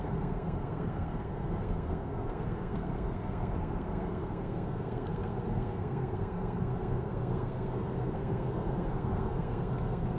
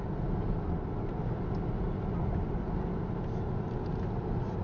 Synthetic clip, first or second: first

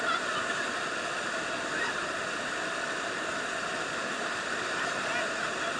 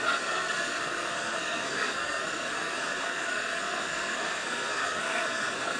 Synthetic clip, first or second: second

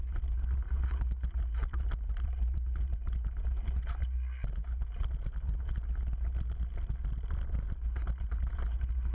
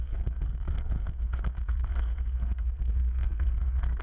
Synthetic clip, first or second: second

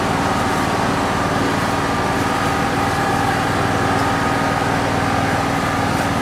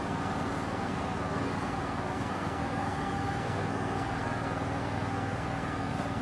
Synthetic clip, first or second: second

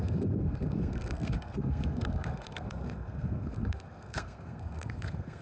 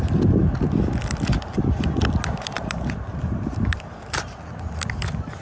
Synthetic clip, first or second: first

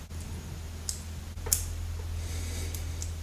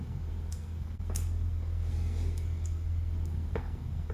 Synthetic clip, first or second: second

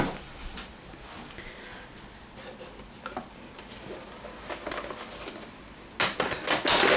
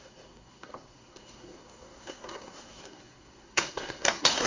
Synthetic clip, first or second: second